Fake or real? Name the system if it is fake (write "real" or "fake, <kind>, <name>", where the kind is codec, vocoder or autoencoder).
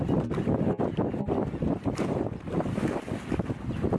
real